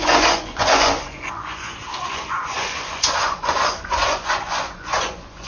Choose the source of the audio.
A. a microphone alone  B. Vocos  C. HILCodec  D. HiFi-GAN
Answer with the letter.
B